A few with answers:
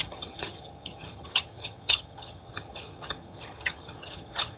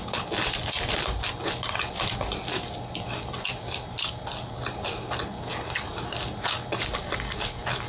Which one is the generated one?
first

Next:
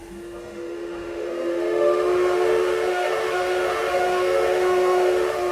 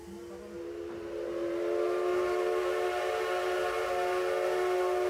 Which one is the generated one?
first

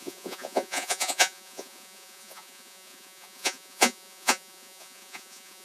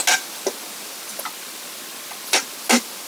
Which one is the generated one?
first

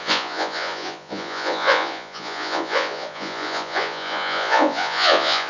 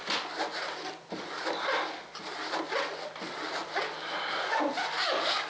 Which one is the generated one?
first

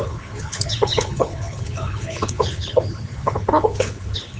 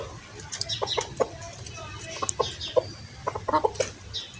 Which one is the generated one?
first